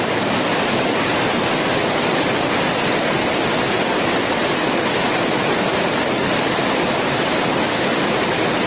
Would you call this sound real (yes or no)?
yes